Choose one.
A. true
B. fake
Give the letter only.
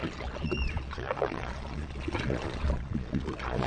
B